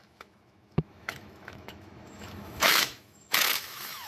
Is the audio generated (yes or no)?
yes